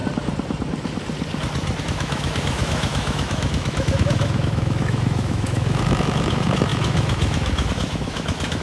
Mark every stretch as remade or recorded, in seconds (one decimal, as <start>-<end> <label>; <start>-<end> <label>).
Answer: 0.0-1.8 recorded; 1.8-8.6 remade